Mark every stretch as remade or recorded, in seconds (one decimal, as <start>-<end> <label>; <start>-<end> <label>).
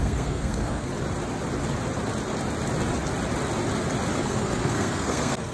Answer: 0.0-0.9 remade; 0.9-4.2 recorded; 4.2-5.5 remade